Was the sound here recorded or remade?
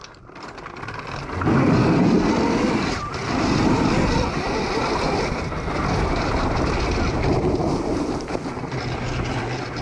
recorded